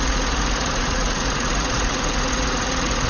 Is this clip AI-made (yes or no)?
yes